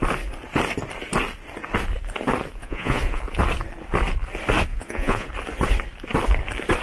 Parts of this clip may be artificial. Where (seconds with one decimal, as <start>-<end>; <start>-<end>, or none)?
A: 2.6-3.2; 4.7-5.3